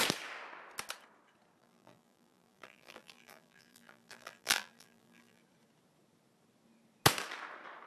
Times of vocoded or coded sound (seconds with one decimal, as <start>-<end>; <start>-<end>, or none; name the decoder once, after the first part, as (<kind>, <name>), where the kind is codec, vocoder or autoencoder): 1.6-5.4 (vocoder, BigVGAN v2)